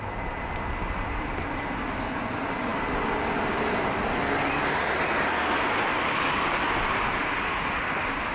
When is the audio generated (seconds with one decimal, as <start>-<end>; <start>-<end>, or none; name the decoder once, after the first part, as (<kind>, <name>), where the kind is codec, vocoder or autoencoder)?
none